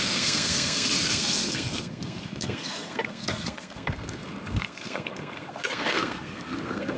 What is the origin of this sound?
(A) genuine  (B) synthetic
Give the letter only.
B